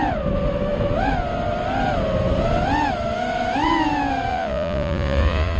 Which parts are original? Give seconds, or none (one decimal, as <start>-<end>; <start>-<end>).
0.0-4.3